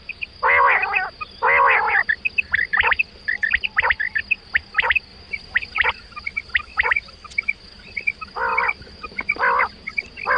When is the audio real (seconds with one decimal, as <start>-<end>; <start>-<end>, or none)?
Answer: 0.0-2.7; 4.6-5.1; 5.9-8.5; 9.6-10.4

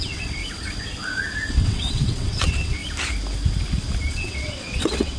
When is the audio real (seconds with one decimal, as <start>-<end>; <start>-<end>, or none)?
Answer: 0.4-1.5; 2.8-4.1

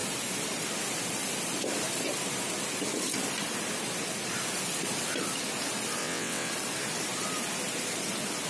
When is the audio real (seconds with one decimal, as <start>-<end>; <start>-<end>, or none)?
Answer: 0.0-6.0; 6.5-8.5

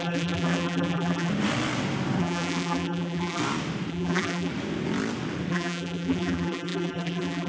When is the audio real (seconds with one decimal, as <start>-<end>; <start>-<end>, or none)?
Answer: 1.3-2.2; 3.4-3.9; 4.5-5.5

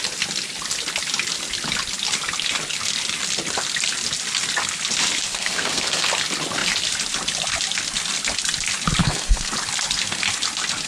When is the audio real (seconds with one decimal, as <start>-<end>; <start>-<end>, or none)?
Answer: 0.0-5.3; 6.1-9.0; 9.5-10.9

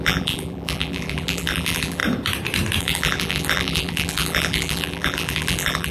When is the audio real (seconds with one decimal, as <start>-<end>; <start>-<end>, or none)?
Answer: 2.0-2.8

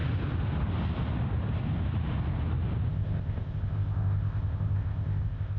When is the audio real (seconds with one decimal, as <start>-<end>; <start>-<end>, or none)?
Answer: 0.0-2.9